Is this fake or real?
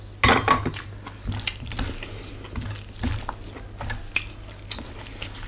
real